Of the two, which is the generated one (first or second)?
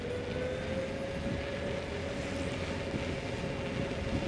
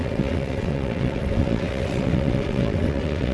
second